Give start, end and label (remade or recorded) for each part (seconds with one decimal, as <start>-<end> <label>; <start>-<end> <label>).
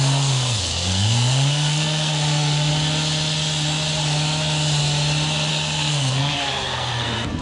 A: 0.0-2.7 remade; 2.7-5.5 recorded; 5.5-7.4 remade